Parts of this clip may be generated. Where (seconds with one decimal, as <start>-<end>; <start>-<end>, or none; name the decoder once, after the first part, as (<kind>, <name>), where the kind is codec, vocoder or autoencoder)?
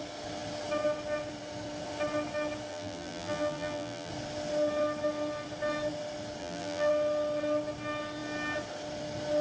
2.7-4.1 (vocoder, BigVGAN v2); 6.4-6.9